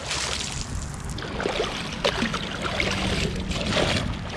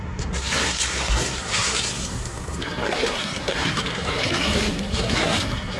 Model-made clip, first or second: second